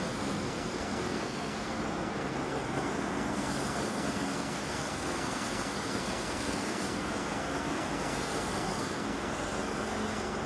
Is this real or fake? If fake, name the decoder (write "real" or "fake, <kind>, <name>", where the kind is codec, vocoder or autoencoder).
fake, codec, SNAC